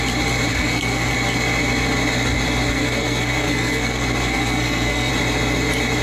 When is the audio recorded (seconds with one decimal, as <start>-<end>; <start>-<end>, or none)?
0.0-0.5; 1.1-2.7; 5.1-6.0